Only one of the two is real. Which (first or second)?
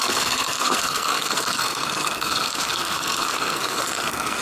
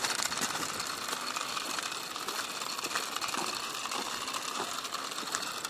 second